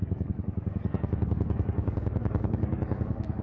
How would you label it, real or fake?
fake